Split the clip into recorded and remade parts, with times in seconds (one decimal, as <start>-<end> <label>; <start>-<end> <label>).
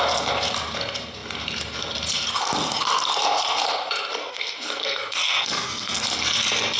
0.0-4.2 recorded; 4.2-6.0 remade; 6.0-6.8 recorded